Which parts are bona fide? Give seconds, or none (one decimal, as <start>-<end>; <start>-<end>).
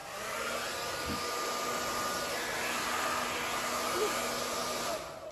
0.0-5.3